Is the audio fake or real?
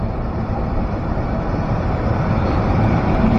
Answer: fake